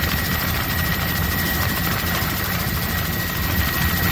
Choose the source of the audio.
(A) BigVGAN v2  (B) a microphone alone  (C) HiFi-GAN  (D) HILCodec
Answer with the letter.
A